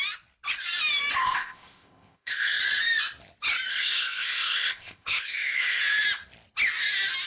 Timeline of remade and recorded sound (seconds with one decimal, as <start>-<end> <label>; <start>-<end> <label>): 0.0-1.2 recorded; 1.2-2.6 remade; 2.6-3.7 recorded; 3.7-5.8 remade; 5.8-7.3 recorded